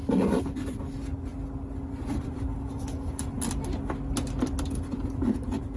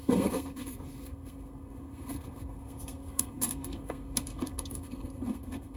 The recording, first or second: first